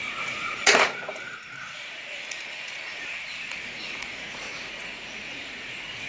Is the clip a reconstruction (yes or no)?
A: yes